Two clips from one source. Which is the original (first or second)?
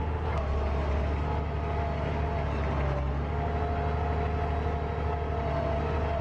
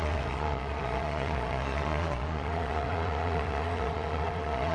first